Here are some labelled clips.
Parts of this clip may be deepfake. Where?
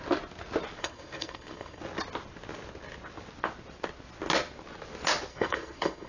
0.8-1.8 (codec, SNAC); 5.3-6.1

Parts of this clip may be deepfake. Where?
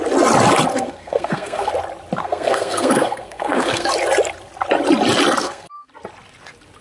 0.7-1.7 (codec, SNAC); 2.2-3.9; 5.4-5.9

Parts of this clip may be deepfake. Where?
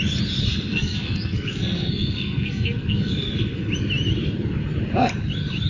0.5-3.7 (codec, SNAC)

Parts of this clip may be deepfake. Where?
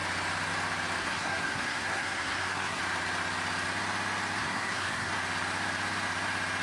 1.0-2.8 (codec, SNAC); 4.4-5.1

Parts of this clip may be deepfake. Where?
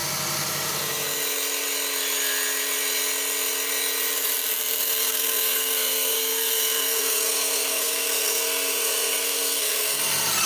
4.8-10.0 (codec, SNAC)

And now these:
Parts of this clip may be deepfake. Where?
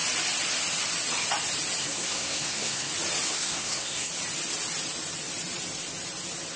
1.8-2.9 (codec, SNAC); 3.3-4.1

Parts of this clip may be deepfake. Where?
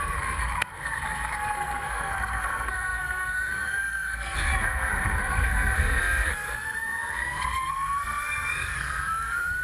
0.0-9.6 (codec, SNAC)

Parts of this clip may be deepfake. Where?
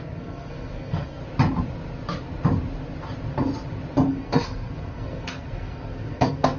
0.0-1.2 (codec, SNAC); 4.1-6.6